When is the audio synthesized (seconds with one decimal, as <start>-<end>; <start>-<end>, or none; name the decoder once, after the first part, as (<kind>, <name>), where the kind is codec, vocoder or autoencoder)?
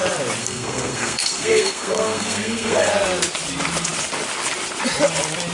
0.4-2.9 (codec, SNAC)